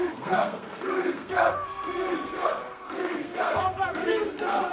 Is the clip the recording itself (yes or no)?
no